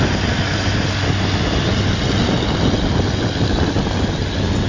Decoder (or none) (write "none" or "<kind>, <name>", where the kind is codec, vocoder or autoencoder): none